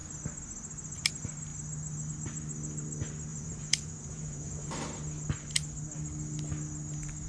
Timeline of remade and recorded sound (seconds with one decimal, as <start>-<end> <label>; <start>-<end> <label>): 0.0-3.3 recorded; 3.3-4.7 remade; 4.7-7.3 recorded